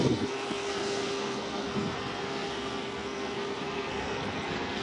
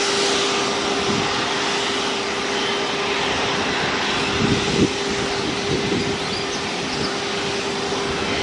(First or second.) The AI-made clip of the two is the first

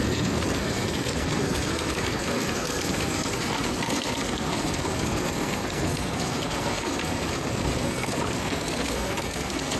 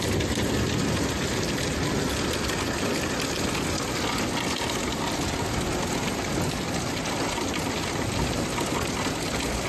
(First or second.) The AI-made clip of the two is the first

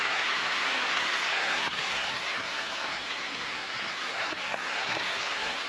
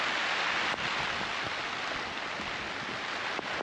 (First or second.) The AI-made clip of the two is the first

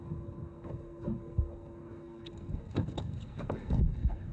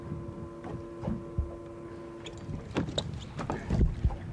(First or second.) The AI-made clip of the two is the first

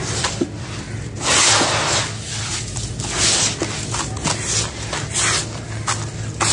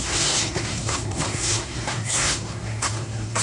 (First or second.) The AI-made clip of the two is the second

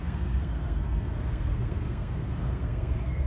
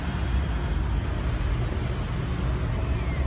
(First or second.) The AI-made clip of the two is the first